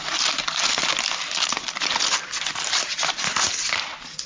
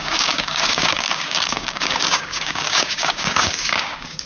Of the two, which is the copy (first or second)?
second